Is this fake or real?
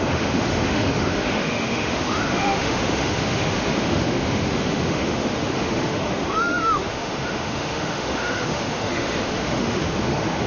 fake